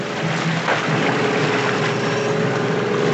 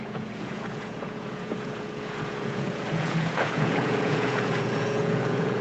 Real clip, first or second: first